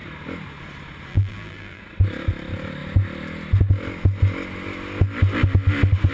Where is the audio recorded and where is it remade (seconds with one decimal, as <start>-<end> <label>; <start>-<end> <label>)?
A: 0.0-1.1 recorded; 1.1-1.8 remade; 1.8-6.1 recorded